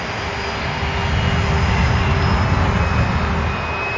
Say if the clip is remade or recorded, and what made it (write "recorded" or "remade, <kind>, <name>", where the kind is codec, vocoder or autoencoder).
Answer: recorded